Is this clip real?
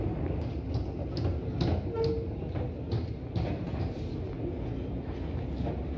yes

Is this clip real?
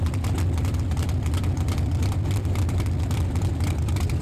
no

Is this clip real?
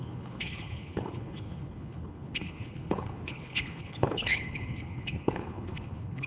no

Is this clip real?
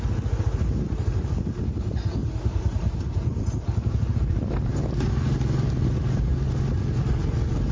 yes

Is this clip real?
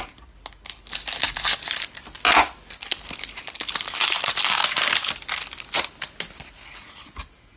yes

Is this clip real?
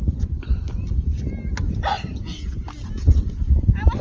yes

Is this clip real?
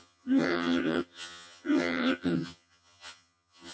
no